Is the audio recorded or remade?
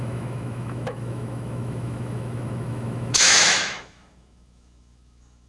remade